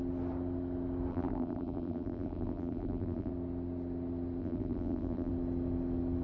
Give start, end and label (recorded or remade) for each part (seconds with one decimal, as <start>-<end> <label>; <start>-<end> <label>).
0.0-1.1 recorded; 1.1-3.3 remade; 3.3-4.4 recorded; 4.4-5.3 remade; 5.3-6.2 recorded